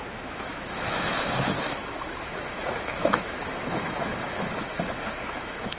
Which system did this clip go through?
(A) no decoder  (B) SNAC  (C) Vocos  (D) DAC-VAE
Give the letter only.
D